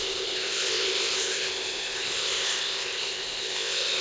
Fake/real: fake